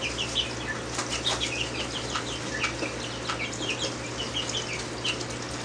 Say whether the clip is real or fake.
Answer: real